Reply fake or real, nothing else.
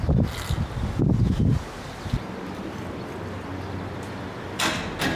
real